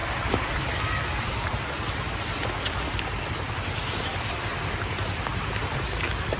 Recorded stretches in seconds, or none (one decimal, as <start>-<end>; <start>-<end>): 0.0-6.4